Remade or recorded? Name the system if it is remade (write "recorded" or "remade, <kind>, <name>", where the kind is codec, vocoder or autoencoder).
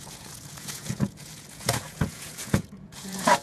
remade, vocoder, Vocos